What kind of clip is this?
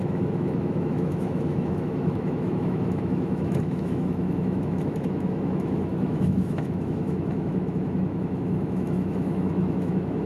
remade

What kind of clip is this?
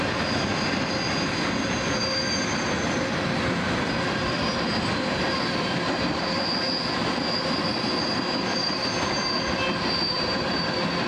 recorded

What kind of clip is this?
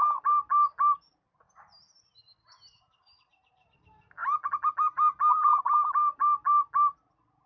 recorded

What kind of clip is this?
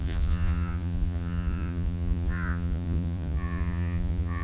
remade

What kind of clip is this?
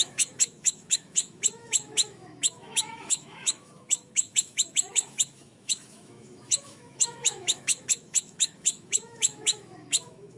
remade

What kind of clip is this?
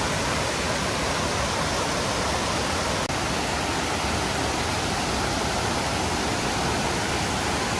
recorded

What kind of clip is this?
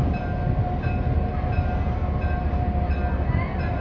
recorded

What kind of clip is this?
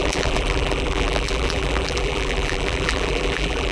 remade